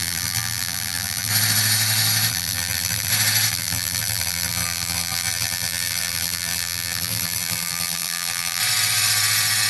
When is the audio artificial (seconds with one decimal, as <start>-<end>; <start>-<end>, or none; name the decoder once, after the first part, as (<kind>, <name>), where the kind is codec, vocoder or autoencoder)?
0.0-1.3 (vocoder, BigVGAN v2); 2.3-3.1; 3.5-8.6